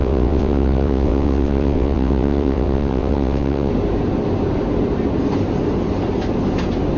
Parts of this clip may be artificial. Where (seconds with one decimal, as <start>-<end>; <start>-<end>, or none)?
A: 0.0-3.7